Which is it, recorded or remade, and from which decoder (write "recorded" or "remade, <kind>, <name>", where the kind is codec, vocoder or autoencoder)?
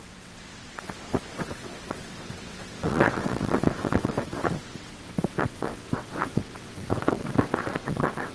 remade, vocoder, WaveNeXt